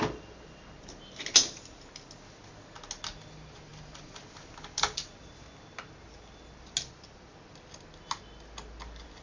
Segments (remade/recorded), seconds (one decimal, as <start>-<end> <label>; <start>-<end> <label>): 0.0-9.2 recorded